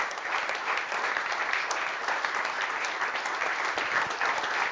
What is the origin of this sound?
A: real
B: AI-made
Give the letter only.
A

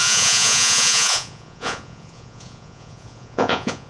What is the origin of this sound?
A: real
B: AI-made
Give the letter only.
B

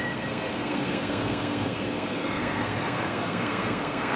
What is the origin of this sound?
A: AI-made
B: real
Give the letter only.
A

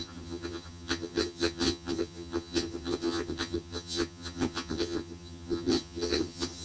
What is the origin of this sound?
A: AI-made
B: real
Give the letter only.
A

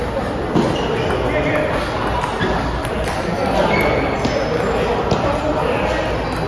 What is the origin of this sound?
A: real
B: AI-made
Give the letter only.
A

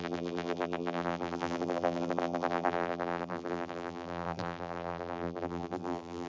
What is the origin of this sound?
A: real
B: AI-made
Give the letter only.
B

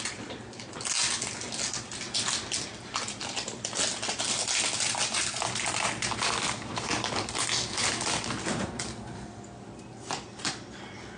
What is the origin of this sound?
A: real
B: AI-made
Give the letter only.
A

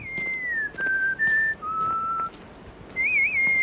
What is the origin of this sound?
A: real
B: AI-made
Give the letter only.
A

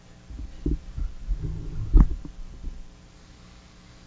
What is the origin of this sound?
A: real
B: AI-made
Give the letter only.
A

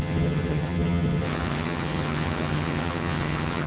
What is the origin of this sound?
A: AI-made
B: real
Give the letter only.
A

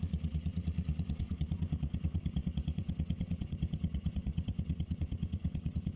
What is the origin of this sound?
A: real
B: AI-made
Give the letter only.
B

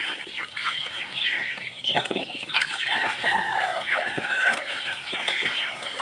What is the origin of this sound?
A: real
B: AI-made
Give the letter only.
B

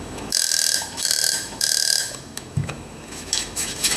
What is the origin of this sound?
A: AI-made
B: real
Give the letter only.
A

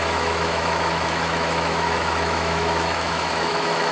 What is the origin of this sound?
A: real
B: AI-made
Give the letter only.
B